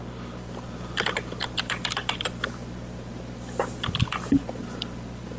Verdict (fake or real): fake